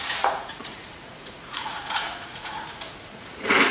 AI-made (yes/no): yes